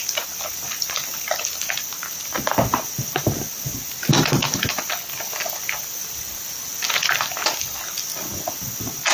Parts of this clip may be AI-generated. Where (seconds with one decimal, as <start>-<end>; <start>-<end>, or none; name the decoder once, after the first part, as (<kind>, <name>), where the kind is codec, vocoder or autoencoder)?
6.0-6.9 (vocoder, BigVGAN v2)